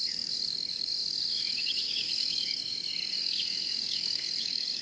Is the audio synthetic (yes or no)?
yes